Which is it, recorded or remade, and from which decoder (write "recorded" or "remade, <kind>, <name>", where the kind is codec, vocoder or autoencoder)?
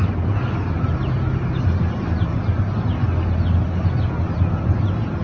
recorded